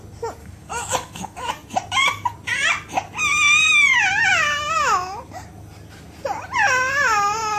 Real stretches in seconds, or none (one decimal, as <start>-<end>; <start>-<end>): 0.0-0.4; 1.5-7.6